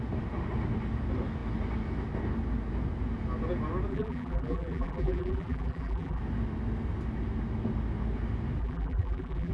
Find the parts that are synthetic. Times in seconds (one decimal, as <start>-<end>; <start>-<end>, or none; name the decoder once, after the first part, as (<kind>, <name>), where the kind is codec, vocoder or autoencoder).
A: 3.9-6.2 (vocoder, BigVGAN v2); 8.6-9.5